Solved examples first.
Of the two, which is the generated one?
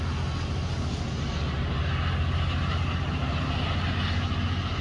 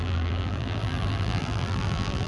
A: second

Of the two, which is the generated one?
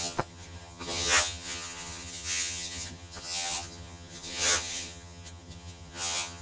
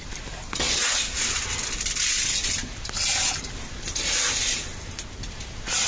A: first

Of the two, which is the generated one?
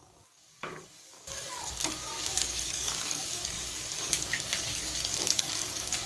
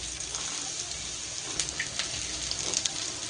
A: first